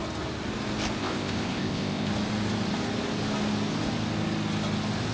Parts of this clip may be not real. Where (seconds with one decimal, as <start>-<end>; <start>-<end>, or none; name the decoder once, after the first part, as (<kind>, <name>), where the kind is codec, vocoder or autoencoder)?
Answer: 1.0-2.1 (codec, ZipCodec)